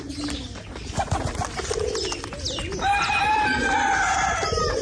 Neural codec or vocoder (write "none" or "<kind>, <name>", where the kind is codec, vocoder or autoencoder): none